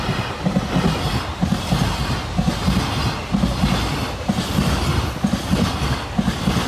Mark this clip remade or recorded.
recorded